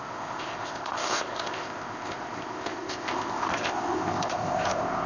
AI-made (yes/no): yes